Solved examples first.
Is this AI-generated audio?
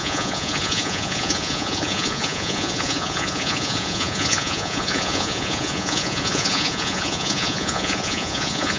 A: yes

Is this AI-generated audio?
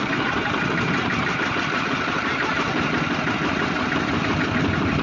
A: no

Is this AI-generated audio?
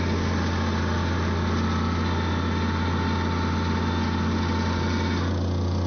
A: no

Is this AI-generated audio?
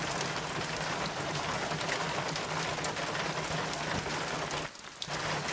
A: no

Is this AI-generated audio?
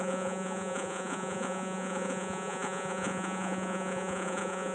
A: yes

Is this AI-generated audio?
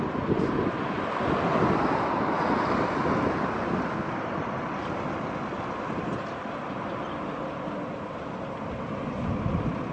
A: no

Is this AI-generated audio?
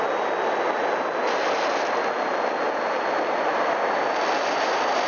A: no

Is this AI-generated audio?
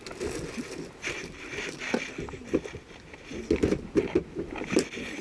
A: no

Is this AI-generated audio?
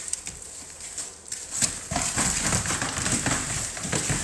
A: no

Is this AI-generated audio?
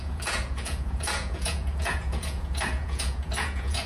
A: yes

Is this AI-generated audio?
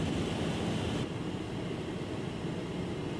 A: no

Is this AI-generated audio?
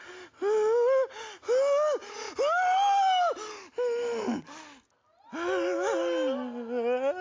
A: no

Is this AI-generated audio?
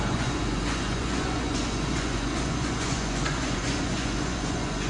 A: yes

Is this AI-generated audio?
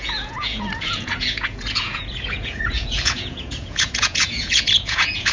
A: yes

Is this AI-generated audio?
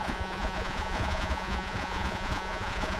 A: yes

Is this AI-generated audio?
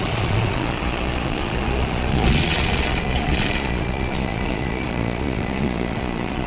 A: yes